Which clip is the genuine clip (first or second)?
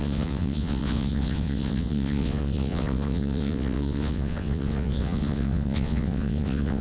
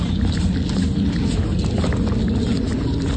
second